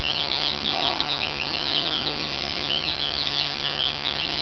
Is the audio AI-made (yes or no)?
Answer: yes